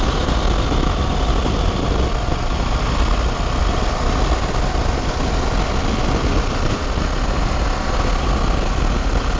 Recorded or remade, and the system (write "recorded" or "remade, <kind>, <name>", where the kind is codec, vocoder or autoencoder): recorded